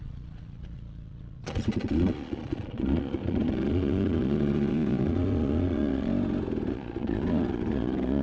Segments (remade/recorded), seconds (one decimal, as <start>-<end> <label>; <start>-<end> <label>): 0.0-6.1 remade; 6.1-6.7 recorded; 6.7-8.2 remade